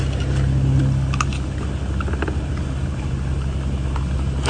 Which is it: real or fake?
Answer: real